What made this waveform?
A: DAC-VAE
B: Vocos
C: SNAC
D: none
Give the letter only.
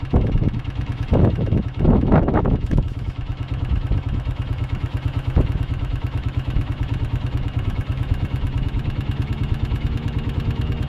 A